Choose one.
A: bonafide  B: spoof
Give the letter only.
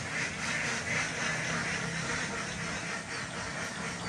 A